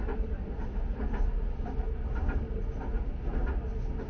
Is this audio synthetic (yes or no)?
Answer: no